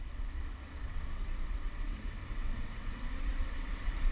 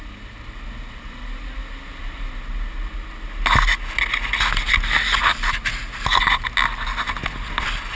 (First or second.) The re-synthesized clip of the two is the first